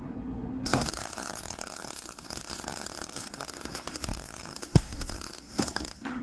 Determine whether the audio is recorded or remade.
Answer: remade